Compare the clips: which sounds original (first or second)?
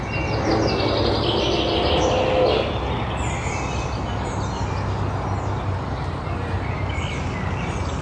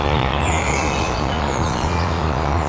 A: first